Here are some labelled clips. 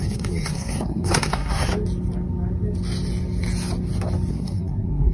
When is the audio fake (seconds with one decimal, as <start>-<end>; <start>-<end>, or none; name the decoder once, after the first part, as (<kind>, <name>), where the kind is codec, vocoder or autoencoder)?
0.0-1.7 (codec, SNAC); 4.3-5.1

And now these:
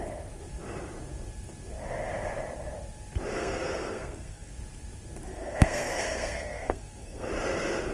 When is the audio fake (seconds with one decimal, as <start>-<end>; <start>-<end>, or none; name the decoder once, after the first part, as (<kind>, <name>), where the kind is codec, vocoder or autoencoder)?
3.3-4.5 (codec, SNAC); 5.3-7.3

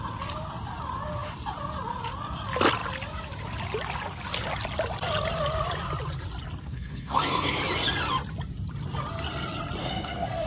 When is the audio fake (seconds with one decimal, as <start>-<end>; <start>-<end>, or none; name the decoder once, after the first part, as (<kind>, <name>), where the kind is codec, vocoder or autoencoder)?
6.6-7.6 (codec, SNAC); 9.8-10.5